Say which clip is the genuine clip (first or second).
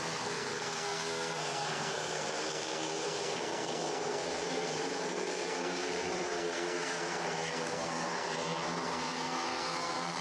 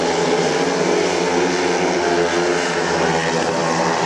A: second